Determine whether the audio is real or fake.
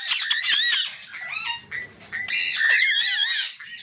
real